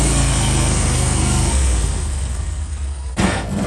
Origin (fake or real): fake